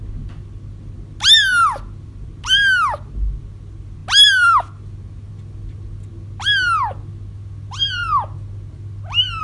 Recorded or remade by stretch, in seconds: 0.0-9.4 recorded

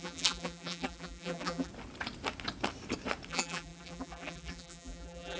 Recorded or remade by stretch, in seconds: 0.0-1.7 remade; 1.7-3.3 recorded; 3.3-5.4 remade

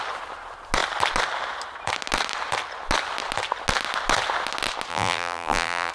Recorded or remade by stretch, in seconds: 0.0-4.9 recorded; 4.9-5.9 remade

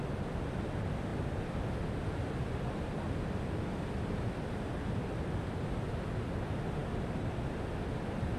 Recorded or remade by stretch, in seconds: 0.0-1.1 recorded; 1.1-6.1 remade; 6.1-6.8 recorded; 6.8-7.4 remade; 7.4-8.4 recorded

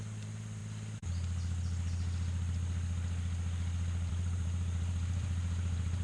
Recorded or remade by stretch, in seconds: 0.0-0.6 remade; 0.6-4.1 recorded; 4.1-6.0 remade

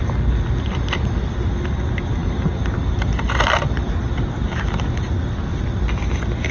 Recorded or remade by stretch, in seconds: 0.0-6.5 recorded

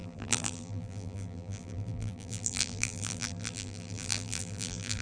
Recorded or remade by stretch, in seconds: 0.0-5.0 remade